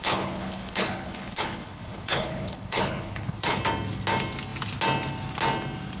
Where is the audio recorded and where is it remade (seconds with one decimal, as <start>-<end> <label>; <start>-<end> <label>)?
0.0-3.6 remade; 3.6-6.0 recorded